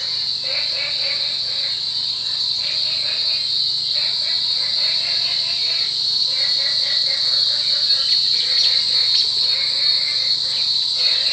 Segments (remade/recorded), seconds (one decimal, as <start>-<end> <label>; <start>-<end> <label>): 0.0-7.4 recorded; 7.4-8.3 remade; 8.3-11.3 recorded